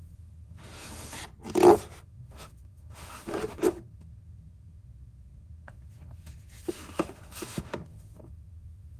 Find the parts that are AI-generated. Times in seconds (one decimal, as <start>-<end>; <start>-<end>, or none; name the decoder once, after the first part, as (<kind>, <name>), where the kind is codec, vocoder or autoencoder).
0.0-1.2 (autoencoder, DAC-VAE); 2.0-9.0